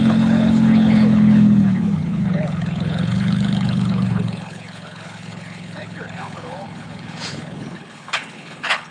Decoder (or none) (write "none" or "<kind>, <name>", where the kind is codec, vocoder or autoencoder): codec, HILCodec